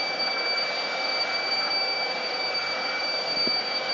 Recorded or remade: remade